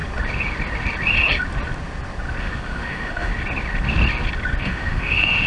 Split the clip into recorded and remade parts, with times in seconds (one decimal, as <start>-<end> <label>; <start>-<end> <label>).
0.0-2.4 recorded; 2.4-3.3 remade; 3.3-4.6 recorded; 4.6-5.5 remade